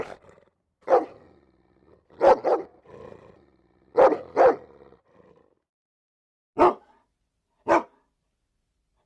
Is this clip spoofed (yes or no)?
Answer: no